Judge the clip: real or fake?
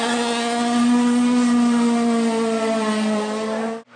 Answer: real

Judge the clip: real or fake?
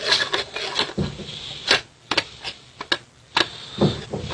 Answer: real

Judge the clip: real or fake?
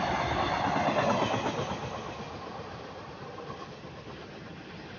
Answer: real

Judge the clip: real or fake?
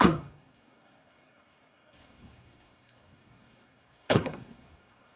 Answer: fake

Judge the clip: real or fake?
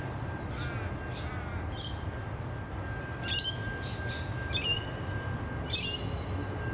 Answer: real